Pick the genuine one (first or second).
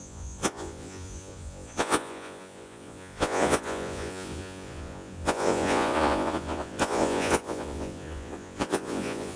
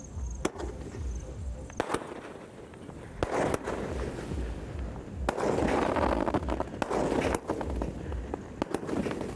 second